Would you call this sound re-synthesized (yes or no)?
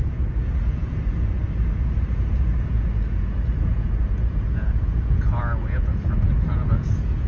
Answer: yes